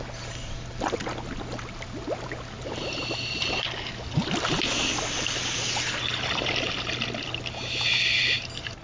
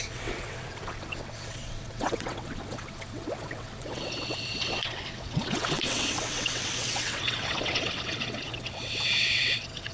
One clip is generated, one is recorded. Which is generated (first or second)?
second